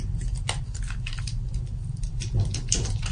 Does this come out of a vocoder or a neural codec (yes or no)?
no